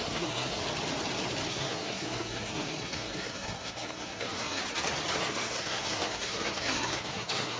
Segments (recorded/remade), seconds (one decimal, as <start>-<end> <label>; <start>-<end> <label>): 0.0-0.6 remade; 0.6-1.5 recorded; 1.5-4.6 remade; 4.6-5.2 recorded; 5.2-7.6 remade